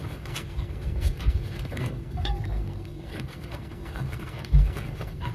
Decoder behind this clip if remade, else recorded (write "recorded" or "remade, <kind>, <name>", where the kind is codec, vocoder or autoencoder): remade, codec, SNAC